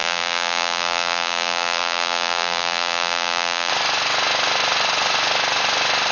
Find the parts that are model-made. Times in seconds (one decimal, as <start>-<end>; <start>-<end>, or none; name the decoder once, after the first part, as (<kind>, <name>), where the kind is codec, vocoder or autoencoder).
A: 0.0-3.7 (vocoder, BigVGAN v2)